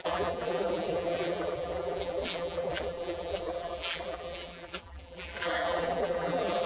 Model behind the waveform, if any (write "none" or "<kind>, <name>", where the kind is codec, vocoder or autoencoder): vocoder, BigVGAN v2